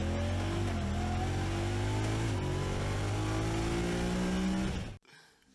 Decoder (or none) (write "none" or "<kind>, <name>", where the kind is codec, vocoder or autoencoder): none